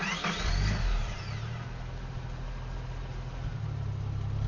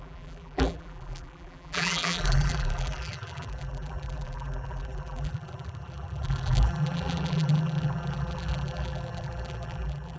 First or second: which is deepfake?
second